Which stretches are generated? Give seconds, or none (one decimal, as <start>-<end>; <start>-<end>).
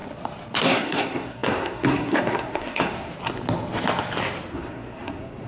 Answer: 0.6-3.1; 4.5-5.5